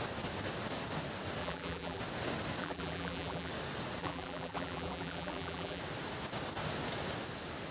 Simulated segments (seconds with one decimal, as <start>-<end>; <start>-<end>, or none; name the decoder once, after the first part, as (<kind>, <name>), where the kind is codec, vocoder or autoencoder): 1.4-2.0 (vocoder, BigVGAN v2); 2.6-3.5; 4.0-5.8